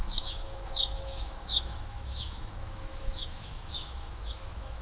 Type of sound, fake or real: fake